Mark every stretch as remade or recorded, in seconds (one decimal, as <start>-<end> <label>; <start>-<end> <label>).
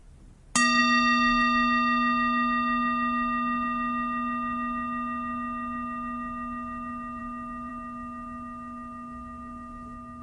0.0-10.2 recorded